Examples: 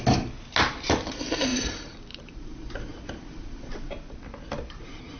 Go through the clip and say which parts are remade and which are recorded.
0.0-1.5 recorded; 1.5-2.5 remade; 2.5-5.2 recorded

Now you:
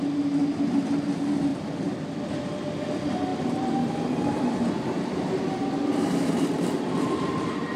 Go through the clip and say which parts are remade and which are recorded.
0.0-1.5 recorded; 1.5-2.2 remade; 2.2-3.3 recorded; 3.3-7.8 remade

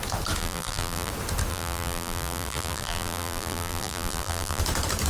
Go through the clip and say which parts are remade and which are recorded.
0.0-0.4 recorded; 0.4-1.1 remade; 1.1-1.5 recorded; 1.5-4.6 remade; 4.6-5.1 recorded

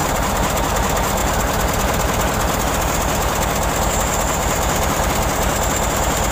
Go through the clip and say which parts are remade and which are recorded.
0.0-0.7 remade; 0.7-4.4 recorded; 4.4-5.1 remade; 5.1-6.3 recorded

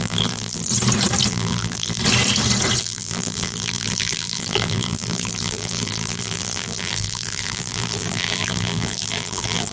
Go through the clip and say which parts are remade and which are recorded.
0.0-0.7 remade; 0.7-1.3 recorded; 1.3-2.0 remade; 2.0-2.8 recorded; 2.8-9.7 remade

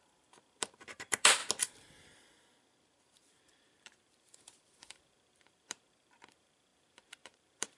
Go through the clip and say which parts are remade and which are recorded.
0.0-1.4 remade; 1.4-3.0 recorded; 3.0-7.8 remade